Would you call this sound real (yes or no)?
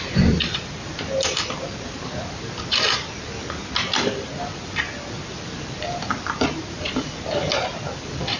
yes